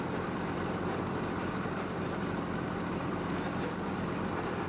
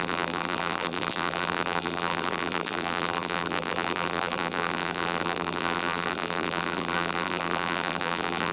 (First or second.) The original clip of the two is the first